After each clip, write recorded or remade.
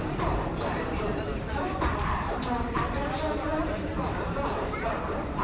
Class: remade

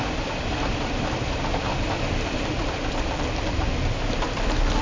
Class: remade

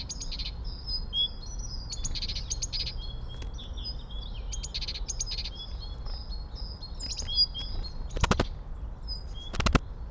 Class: recorded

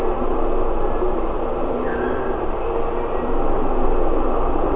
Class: recorded